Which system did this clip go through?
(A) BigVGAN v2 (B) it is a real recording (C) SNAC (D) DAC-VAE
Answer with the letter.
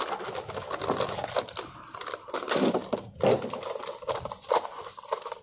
B